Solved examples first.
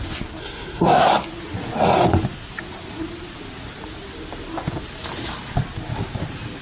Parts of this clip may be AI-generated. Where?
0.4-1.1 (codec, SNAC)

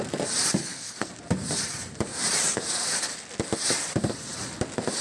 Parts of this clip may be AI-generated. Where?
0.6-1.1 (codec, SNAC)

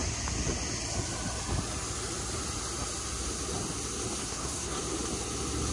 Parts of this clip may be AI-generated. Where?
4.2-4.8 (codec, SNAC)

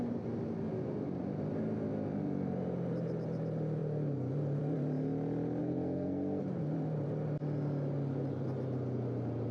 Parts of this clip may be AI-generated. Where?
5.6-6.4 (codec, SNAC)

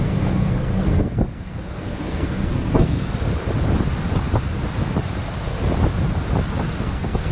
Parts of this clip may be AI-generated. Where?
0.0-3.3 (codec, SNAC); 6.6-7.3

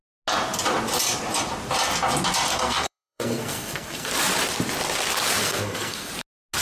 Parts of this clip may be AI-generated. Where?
2.5-4.1 (codec, SNAC); 5.4-6.1

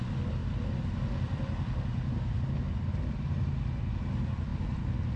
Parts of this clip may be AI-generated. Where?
none

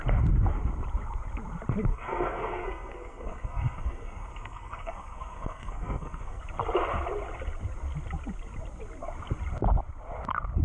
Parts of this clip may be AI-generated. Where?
1.9-6.4 (codec, SNAC)